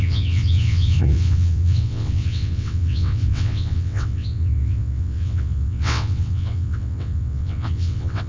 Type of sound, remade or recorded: remade